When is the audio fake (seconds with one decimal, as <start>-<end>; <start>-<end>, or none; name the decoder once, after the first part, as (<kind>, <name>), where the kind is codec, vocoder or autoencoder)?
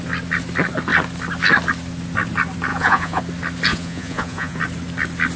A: 2.7-3.2 (vocoder, Vocos); 3.7-4.6